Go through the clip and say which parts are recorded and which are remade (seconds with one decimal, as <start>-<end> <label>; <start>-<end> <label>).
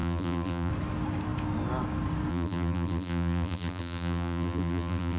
0.0-0.7 remade; 0.7-2.3 recorded; 2.3-5.2 remade